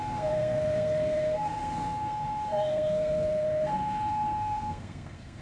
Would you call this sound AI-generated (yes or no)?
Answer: yes